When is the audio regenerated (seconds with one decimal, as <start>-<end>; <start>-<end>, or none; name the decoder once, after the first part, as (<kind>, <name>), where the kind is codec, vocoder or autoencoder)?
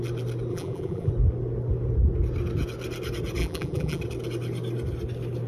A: 0.5-1.1 (vocoder, BigVGAN v2); 3.4-4.0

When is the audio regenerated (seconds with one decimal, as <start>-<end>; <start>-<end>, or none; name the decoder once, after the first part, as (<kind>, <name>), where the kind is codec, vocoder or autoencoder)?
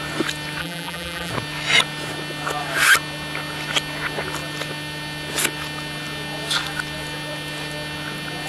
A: 0.6-1.3 (vocoder, BigVGAN v2)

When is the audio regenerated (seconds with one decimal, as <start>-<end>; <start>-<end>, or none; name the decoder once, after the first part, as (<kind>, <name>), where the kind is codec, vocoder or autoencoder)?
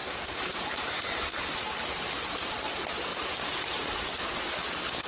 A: 3.1-3.7 (vocoder, BigVGAN v2)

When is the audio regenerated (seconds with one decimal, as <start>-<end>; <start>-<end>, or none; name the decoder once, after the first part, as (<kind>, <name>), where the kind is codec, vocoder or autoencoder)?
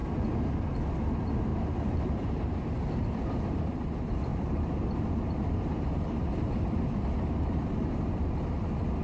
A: 1.5-3.6 (vocoder, BigVGAN v2); 4.3-8.3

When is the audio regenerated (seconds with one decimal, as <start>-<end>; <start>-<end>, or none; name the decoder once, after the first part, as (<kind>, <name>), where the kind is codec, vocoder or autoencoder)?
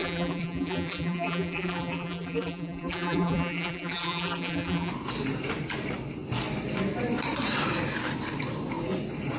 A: 0.0-4.9 (vocoder, BigVGAN v2)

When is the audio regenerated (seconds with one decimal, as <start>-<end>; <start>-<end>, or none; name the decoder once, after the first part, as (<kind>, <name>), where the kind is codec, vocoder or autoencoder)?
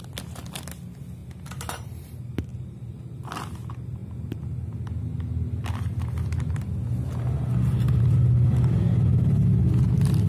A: 1.2-2.1 (vocoder, BigVGAN v2); 2.5-3.0